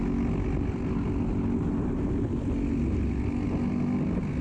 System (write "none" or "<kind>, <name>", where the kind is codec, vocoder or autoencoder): none